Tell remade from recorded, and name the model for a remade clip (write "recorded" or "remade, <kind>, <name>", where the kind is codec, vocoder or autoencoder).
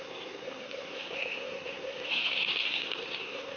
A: remade, codec, SNAC